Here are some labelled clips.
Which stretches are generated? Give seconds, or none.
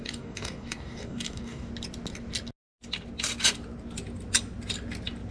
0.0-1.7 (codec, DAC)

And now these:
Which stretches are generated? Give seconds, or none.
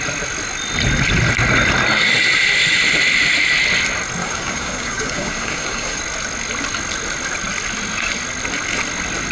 4.2-6.0 (codec, DAC)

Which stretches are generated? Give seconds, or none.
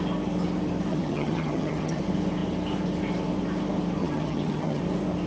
0.9-2.0 (vocoder, HiFi-GAN); 4.0-4.8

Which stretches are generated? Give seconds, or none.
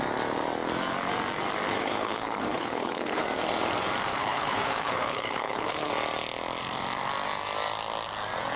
1.8-3.2 (codec, HILCodec); 4.1-5.9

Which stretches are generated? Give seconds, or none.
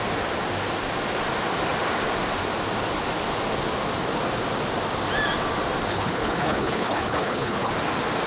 5.9-7.7 (codec, HILCodec)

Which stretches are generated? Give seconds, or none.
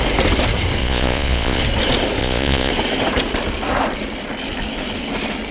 0.8-1.6 (vocoder, Vocos); 2.2-2.7